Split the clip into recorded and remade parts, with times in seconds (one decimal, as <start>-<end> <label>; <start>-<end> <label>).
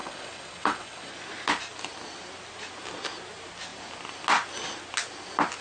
0.0-1.1 remade; 1.1-5.6 recorded